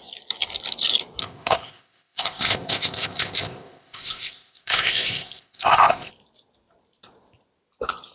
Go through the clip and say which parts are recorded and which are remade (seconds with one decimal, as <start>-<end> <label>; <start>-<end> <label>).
0.0-1.2 recorded; 1.2-6.1 remade; 6.1-8.1 recorded